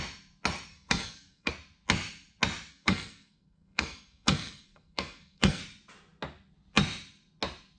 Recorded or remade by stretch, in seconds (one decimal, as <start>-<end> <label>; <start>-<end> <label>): 0.0-0.7 recorded; 0.7-1.5 remade; 1.5-2.7 recorded; 2.7-5.6 remade; 5.6-7.8 recorded